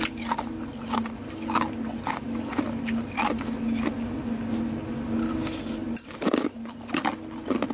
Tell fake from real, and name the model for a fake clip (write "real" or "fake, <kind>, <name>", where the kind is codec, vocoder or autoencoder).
real